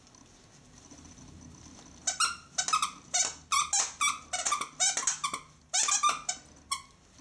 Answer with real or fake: real